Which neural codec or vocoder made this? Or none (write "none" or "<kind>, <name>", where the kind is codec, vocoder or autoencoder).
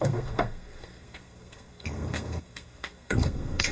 codec, SNAC